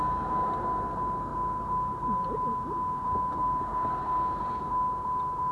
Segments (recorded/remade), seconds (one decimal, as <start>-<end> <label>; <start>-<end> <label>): 0.0-5.5 recorded